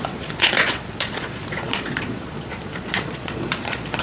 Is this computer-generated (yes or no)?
yes